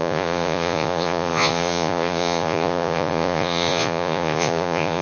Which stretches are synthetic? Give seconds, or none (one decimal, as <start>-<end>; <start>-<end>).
0.0-5.0